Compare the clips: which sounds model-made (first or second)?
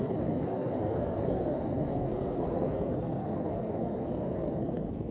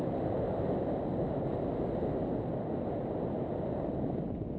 first